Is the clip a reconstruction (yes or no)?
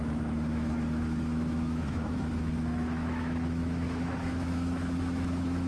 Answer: yes